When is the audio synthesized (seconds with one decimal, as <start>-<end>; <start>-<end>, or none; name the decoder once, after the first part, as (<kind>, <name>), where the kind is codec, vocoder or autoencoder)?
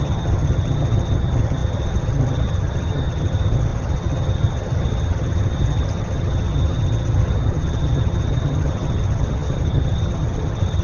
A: 0.0-10.8 (vocoder, HiFi-GAN)